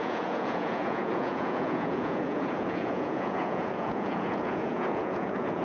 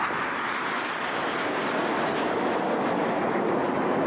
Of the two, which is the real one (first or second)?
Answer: second